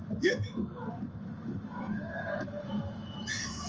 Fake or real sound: fake